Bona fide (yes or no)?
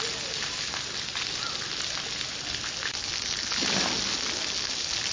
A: yes